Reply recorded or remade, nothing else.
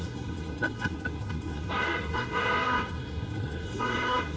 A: remade